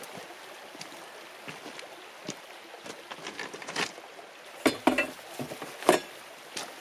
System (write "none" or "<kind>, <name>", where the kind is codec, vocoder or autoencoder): none